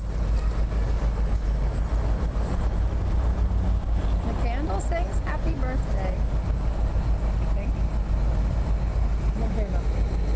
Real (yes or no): yes